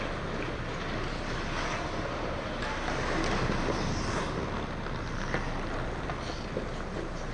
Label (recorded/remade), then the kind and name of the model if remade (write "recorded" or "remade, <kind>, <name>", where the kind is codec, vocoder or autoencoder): recorded